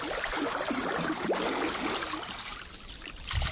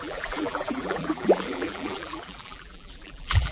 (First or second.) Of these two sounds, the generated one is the second